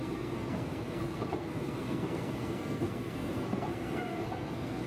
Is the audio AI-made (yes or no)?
yes